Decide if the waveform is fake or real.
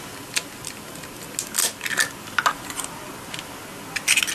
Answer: real